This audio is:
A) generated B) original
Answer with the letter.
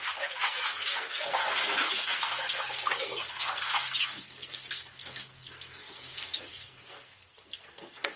A